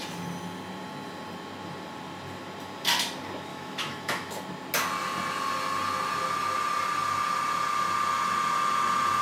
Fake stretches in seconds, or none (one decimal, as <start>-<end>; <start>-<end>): 3.5-4.3